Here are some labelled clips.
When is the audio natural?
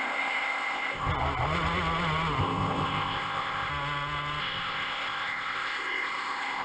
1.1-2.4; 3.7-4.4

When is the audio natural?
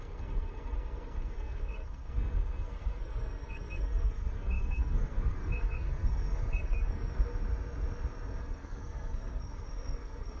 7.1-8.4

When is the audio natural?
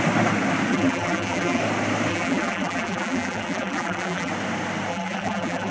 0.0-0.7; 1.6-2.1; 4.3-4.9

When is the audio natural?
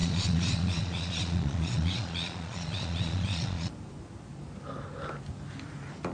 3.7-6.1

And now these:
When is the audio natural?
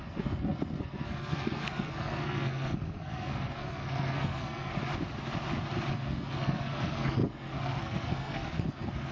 4.7-5.9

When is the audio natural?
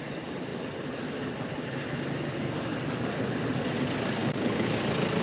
0.0-4.2; 4.8-5.2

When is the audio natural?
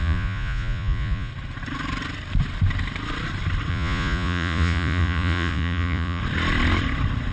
1.3-3.7; 6.2-7.3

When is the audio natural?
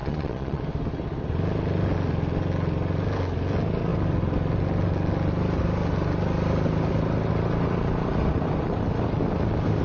0.6-9.8